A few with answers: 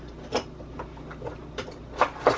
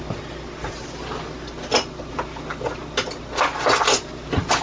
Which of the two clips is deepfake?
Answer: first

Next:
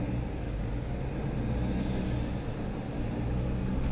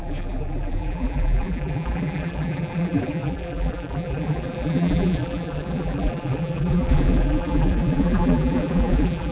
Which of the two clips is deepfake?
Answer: second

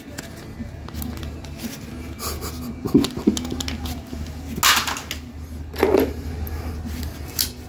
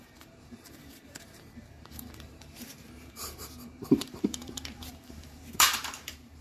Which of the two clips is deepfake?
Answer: second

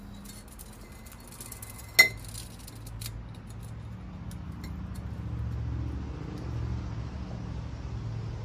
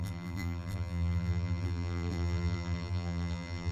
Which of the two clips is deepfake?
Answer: second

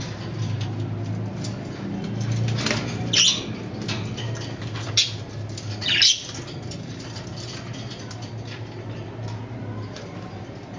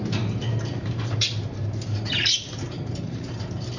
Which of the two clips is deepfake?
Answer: second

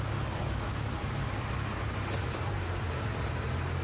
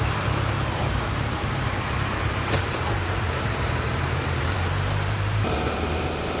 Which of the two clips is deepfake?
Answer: second